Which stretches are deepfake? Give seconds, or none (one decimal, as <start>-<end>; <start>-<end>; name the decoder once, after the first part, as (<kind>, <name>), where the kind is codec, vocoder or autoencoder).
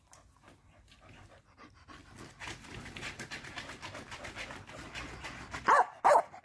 none